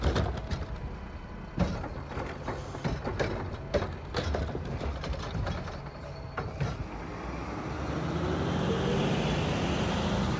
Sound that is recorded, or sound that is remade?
recorded